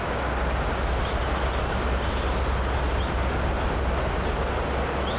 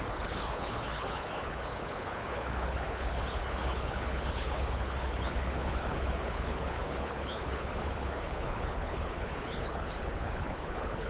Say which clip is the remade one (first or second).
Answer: second